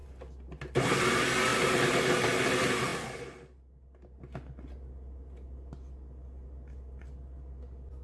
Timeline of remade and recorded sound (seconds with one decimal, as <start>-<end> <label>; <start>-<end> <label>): 0.0-8.0 recorded

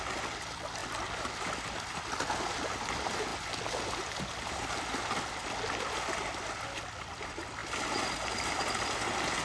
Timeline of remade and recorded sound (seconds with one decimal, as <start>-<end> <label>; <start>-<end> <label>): 0.0-9.4 recorded

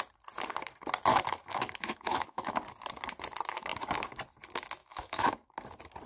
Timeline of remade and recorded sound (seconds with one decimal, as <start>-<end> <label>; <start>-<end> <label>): 0.0-1.1 recorded; 1.1-2.6 remade; 2.6-4.8 recorded; 4.8-5.5 remade; 5.5-6.1 recorded

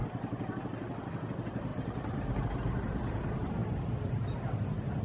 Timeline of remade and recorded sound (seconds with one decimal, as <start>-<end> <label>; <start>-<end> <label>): 0.0-5.0 recorded

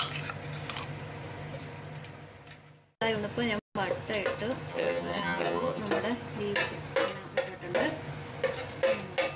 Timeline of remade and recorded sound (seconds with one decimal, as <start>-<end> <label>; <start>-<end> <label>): 0.0-4.7 recorded; 4.7-5.8 remade; 5.8-9.4 recorded

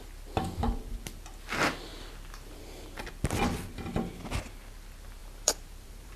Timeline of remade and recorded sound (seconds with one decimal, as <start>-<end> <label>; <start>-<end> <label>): 0.0-5.2 recorded; 5.2-6.2 remade